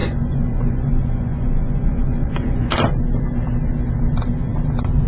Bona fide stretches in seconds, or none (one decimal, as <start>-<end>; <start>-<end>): 2.7-5.1